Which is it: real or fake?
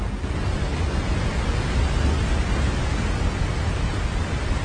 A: real